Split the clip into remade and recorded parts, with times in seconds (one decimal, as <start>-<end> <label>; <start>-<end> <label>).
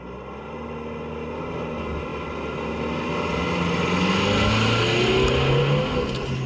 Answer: 0.0-6.5 recorded